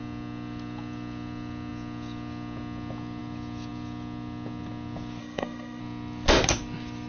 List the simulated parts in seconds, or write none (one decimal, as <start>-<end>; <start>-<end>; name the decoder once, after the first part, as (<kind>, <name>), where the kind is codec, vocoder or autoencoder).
5.2-5.8 (codec, SNAC)

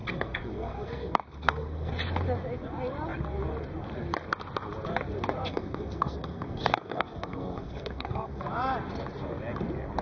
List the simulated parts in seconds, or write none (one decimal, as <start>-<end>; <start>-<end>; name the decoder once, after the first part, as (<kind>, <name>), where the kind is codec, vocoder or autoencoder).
0.0-1.9 (codec, SNAC); 5.5-8.4

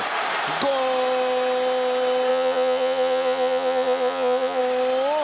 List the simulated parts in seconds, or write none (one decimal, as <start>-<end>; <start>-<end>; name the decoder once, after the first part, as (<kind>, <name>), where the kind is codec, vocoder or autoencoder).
2.3-4.6 (vocoder, Vocos)

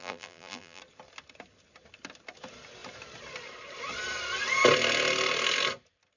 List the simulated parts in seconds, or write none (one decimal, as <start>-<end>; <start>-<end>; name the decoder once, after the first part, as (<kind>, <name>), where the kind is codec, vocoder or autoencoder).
0.0-0.8 (vocoder, BigVGAN v2)

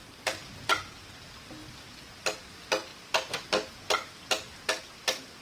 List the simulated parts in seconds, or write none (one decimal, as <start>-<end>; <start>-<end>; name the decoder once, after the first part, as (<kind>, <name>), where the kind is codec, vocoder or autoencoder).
0.0-0.9 (vocoder, BigVGAN v2); 2.9-3.7